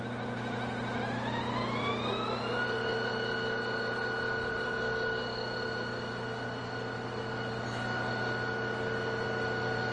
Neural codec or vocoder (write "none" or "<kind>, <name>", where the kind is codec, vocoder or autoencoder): none